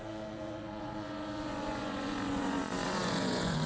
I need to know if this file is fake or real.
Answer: fake